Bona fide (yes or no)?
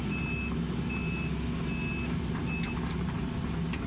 yes